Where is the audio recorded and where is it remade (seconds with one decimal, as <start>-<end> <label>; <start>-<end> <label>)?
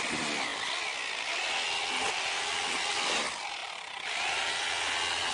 0.0-5.3 recorded